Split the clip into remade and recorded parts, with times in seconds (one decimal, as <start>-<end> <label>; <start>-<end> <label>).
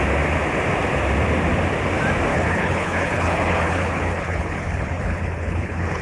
0.0-2.3 recorded; 2.3-6.0 remade